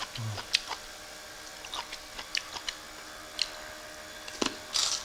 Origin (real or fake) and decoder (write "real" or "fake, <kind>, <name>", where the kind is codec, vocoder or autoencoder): real